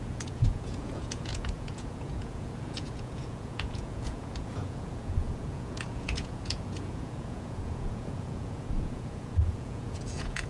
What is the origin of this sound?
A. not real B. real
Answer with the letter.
A